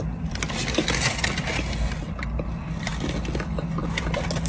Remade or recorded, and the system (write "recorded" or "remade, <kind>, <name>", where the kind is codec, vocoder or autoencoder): recorded